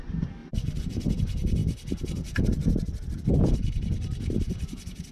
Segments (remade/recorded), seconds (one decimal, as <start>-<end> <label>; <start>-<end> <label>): 0.0-5.1 recorded